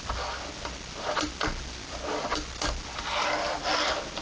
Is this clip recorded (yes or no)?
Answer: yes